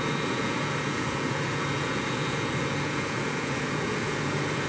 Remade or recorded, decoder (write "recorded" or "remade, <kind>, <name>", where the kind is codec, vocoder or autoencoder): remade, vocoder, Vocos